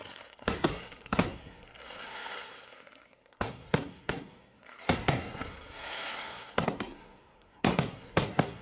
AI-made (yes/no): yes